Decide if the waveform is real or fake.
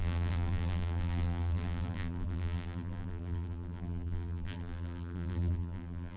fake